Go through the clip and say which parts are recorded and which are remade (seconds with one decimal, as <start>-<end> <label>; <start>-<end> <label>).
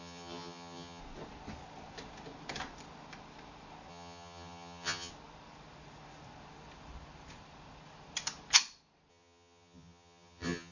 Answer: 0.0-1.0 remade; 1.0-3.9 recorded; 3.9-5.1 remade; 5.1-9.1 recorded; 9.1-10.7 remade